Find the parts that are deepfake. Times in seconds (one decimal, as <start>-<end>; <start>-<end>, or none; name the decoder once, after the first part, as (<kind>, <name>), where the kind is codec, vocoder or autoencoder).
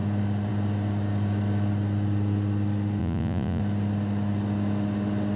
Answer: 3.0-3.6 (vocoder, Vocos)